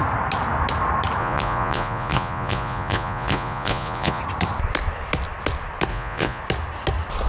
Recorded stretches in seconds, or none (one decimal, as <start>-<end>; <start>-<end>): 0.0-1.2; 4.2-5.9; 6.4-7.3